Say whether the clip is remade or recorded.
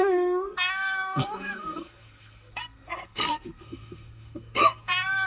remade